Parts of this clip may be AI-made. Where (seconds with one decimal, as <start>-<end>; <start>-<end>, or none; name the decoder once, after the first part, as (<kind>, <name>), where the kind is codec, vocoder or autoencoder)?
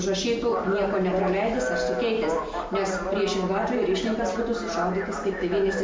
5.2-5.8 (autoencoder, DAC-VAE)